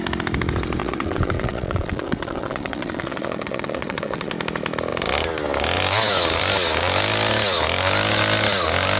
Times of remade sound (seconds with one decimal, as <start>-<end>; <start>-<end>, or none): 0.8-4.3